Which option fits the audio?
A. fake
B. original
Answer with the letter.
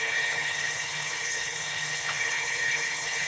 A